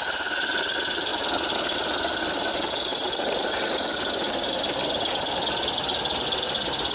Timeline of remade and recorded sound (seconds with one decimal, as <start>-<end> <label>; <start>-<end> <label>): 0.0-2.9 recorded; 2.9-4.0 remade; 4.0-6.9 recorded